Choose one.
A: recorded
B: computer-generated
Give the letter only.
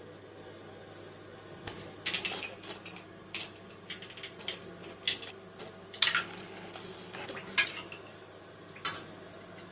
A